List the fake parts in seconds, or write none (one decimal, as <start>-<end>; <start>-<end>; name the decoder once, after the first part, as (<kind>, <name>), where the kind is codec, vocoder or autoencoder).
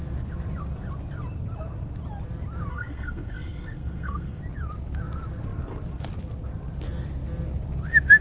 2.7-4.4 (codec, SNAC)